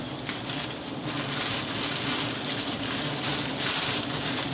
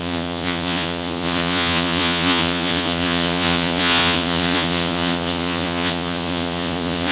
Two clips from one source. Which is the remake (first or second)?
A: second